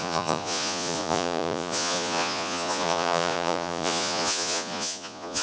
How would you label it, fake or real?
fake